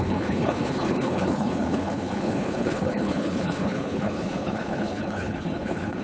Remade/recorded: remade